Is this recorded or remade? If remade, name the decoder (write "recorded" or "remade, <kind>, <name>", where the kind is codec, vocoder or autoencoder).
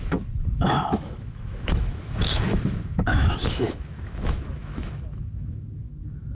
remade, autoencoder, DAC-VAE